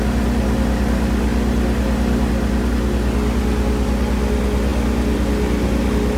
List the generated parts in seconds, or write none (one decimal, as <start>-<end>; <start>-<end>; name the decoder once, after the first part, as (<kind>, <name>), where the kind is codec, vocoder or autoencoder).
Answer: none

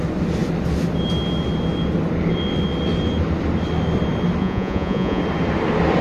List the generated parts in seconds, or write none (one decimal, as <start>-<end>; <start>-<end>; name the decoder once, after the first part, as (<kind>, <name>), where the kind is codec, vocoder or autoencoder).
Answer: 4.4-5.2 (vocoder, Vocos)

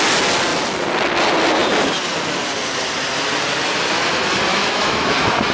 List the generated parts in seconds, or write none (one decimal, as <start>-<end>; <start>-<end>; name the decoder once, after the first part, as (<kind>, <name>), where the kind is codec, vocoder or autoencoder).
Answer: 4.5-5.1 (autoencoder, DAC-VAE)

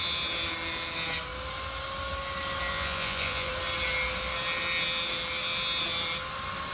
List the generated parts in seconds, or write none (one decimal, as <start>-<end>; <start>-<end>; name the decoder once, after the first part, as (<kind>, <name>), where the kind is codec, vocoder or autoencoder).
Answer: 2.7-3.5 (vocoder, Vocos)

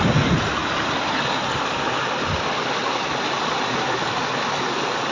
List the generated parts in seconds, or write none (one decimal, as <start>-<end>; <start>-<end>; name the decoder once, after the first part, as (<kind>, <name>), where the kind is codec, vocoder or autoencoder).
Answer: none

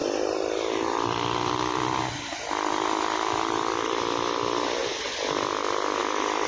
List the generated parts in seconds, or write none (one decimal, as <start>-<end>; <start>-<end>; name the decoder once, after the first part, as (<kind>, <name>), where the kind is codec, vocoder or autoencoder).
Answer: 0.0-3.9 (vocoder, BigVGAN v2); 4.8-6.0